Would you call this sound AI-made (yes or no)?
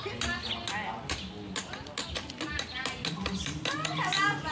no